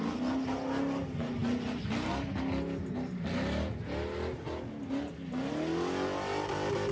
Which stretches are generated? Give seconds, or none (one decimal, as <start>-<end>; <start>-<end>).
none